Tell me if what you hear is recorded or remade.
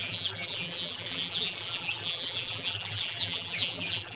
remade